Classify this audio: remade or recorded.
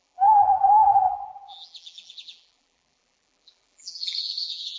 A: remade